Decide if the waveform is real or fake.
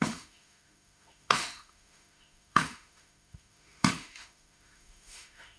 fake